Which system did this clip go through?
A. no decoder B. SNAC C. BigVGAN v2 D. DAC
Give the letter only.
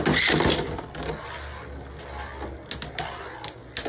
A